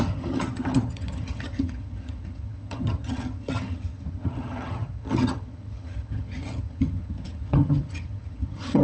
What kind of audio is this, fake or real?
fake